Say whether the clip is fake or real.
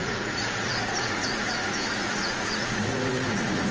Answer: fake